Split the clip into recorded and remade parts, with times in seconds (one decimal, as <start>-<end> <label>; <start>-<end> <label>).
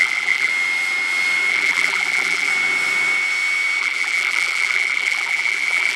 0.0-0.5 remade; 0.5-1.5 recorded; 1.5-2.5 remade; 2.5-3.8 recorded; 3.8-6.0 remade